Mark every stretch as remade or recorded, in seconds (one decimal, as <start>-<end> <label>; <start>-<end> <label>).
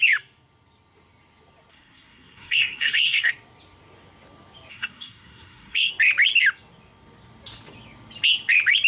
0.0-1.7 recorded; 1.7-3.3 remade; 3.3-4.7 recorded; 4.7-5.9 remade; 5.9-8.9 recorded